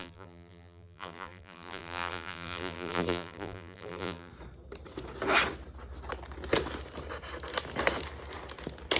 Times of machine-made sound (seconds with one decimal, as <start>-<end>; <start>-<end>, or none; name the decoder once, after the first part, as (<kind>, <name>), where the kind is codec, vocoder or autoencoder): 0.0-4.3 (vocoder, BigVGAN v2)